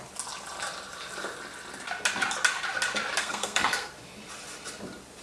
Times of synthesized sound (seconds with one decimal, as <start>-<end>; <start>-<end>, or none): 3.2-3.9